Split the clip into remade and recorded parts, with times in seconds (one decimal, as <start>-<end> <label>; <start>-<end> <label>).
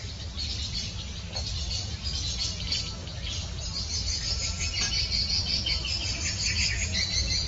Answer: 0.0-7.5 recorded